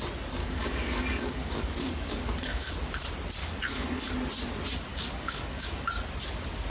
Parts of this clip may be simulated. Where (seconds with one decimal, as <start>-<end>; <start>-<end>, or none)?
0.4-2.7; 3.4-4.0; 4.9-5.9